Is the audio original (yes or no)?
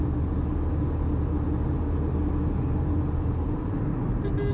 yes